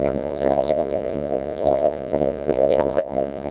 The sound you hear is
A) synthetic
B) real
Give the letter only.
A